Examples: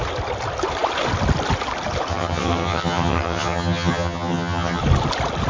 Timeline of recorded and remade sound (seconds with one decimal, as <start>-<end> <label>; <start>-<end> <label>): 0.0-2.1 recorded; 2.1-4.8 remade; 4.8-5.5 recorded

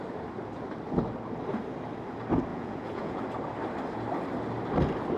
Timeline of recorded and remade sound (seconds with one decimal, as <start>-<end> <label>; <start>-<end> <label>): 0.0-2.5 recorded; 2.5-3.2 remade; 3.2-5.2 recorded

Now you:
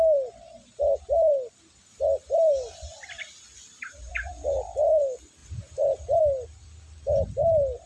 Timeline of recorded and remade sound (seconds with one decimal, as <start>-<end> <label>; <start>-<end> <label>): 0.0-7.9 recorded

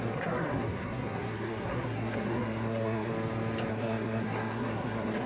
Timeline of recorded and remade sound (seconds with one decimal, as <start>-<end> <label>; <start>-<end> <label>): 0.0-3.1 remade; 3.1-3.7 recorded; 3.7-5.3 remade

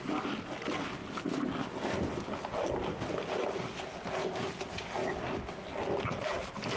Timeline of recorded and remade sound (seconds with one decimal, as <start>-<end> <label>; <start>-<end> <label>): 0.0-6.8 recorded

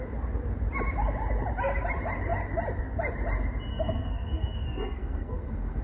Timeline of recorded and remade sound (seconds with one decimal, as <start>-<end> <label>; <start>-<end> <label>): 0.0-3.7 recorded; 3.7-5.8 remade

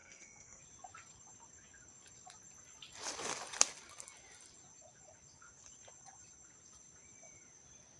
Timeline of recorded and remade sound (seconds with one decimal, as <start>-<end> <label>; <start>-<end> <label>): 0.0-0.6 remade; 0.6-8.0 recorded